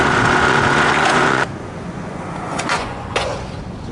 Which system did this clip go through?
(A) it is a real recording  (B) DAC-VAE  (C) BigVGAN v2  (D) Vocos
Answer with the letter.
D